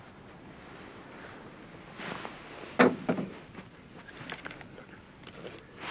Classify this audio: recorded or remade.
recorded